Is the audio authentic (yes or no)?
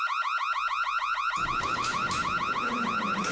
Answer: yes